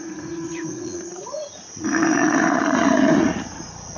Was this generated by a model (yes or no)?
yes